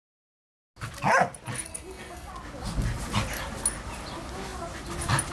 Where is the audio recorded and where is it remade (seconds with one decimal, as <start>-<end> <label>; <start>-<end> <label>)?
0.0-1.7 recorded; 1.7-2.3 remade; 2.3-5.3 recorded